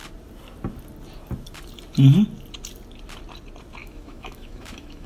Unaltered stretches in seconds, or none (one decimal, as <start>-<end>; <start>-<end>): 0.0-3.8